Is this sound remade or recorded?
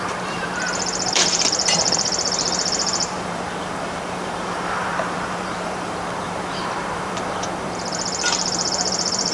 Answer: remade